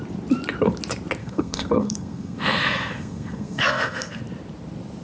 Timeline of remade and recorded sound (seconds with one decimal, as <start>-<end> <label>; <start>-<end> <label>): 0.0-1.2 recorded; 1.2-4.2 remade; 4.2-5.0 recorded